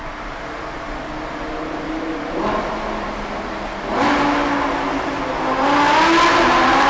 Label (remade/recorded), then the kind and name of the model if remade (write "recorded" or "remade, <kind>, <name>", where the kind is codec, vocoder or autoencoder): recorded